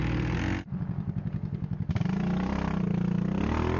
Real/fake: real